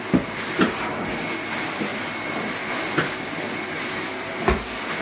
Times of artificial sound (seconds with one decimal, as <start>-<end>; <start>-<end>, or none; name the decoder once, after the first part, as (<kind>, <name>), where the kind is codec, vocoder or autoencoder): none